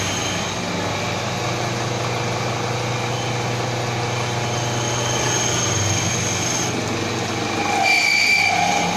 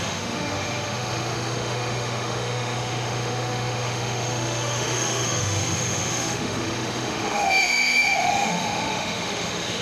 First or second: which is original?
first